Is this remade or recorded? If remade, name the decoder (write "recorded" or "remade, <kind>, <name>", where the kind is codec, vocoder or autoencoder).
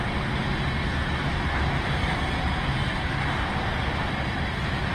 recorded